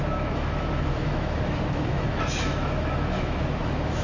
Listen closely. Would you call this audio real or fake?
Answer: fake